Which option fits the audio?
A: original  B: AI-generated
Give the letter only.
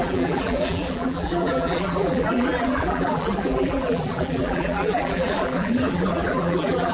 B